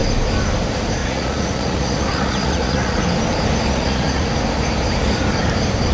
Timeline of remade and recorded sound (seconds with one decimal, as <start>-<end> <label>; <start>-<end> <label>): 0.0-1.0 recorded; 1.0-3.0 remade; 3.0-3.7 recorded; 3.7-4.3 remade; 4.3-5.9 recorded